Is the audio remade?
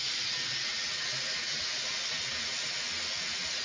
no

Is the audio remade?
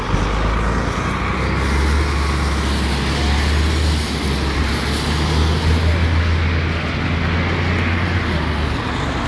no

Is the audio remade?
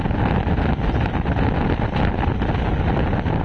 no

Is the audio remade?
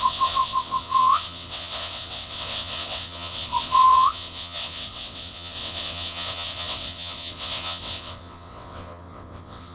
yes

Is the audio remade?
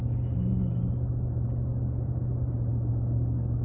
no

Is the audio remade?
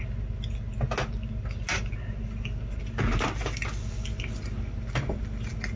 no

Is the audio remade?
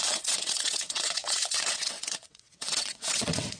yes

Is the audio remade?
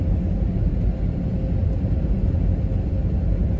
no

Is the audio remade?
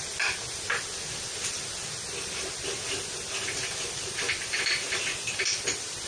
no